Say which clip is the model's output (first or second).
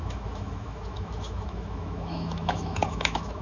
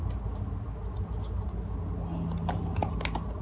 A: first